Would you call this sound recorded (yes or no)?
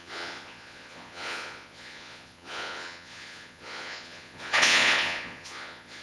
no